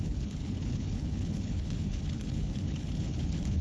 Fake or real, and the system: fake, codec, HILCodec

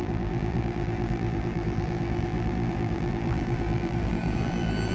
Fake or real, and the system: fake, vocoder, BigVGAN v2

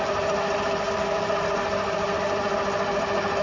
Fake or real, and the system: real